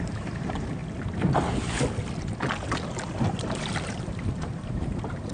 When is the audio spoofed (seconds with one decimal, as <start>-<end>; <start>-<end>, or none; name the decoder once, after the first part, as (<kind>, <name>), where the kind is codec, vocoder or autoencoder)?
0.0-0.8 (vocoder, BigVGAN v2); 3.3-5.3